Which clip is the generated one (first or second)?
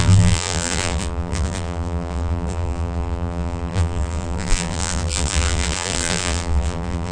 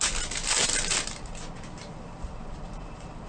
first